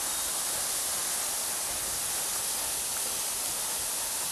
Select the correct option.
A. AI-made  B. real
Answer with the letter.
B